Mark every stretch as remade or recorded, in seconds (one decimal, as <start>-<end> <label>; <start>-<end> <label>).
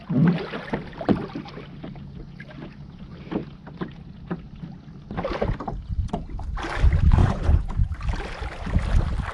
0.0-7.2 recorded; 7.2-7.7 remade; 7.7-9.3 recorded